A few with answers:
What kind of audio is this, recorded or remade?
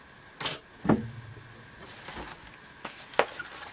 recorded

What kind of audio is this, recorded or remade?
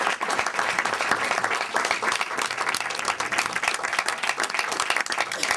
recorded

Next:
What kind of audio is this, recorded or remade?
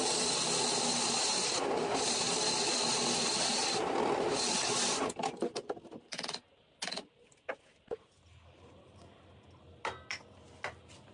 recorded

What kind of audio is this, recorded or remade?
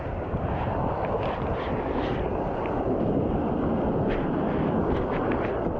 remade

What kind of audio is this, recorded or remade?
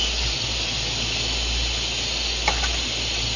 recorded